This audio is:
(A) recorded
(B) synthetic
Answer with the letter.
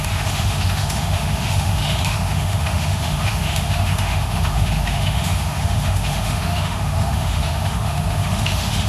B